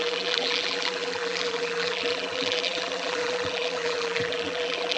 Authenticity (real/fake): fake